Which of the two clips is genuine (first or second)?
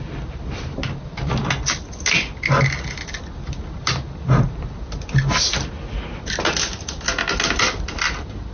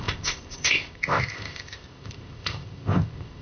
first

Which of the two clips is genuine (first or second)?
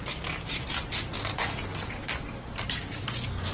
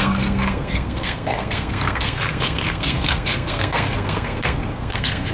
first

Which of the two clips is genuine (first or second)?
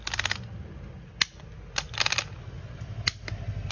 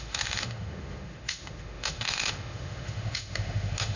first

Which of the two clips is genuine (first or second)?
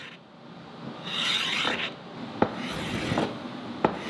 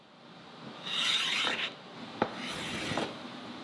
first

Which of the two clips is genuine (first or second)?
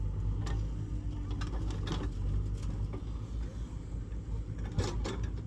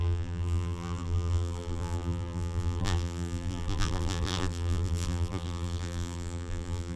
first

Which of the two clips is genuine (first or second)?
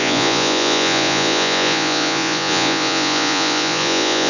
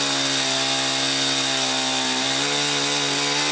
second